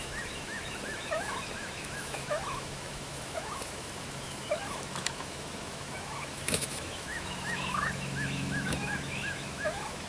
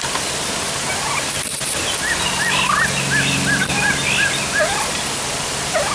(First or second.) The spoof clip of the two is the first